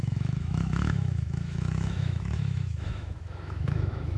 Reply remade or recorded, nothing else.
remade